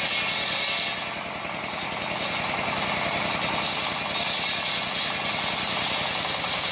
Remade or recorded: recorded